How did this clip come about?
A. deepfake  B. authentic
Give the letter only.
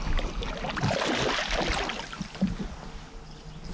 B